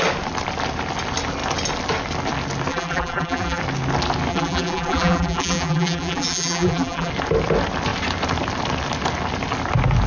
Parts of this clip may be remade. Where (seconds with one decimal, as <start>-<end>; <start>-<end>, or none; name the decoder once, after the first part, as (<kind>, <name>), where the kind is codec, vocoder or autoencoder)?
2.7-3.6 (vocoder, BigVGAN v2); 4.3-7.1